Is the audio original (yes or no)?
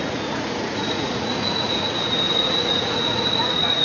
no